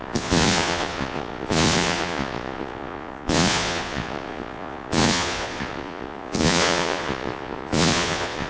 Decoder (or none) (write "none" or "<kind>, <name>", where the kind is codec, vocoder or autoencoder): vocoder, Vocos